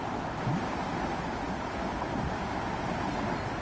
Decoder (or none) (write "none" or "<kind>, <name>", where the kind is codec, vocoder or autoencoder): none